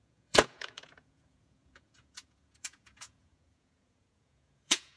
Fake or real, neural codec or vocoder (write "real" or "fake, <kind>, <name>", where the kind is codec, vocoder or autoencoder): fake, vocoder, Vocos